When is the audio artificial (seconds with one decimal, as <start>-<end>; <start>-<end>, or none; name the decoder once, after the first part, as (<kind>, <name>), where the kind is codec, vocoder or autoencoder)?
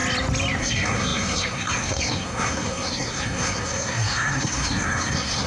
0.6-5.5 (codec, SNAC)